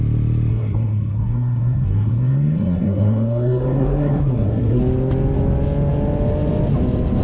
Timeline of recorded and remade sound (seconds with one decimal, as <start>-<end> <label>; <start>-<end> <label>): 0.0-0.5 recorded; 0.5-4.8 remade; 4.8-7.2 recorded